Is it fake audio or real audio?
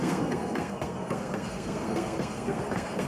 fake